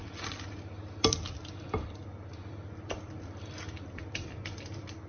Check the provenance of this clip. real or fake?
real